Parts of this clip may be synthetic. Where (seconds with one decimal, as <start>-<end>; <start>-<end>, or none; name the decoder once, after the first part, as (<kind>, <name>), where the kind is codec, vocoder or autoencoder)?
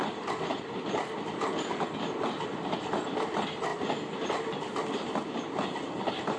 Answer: 0.0-2.2 (vocoder, BigVGAN v2)